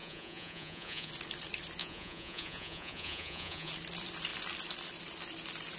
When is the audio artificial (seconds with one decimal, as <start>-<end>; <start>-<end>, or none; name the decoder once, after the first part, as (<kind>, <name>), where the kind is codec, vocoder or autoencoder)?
0.0-1.1 (vocoder, Vocos); 1.8-3.7